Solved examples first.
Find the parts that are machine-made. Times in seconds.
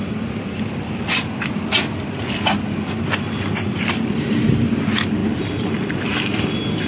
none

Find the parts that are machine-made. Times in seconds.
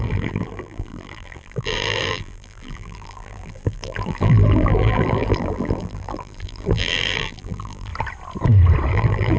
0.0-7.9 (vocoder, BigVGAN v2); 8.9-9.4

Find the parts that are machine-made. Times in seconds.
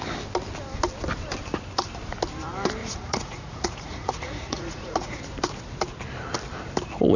2.8-5.2 (vocoder, Vocos)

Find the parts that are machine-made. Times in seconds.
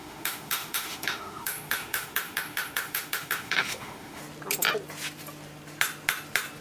0.0-4.2 (autoencoder, DAC-VAE)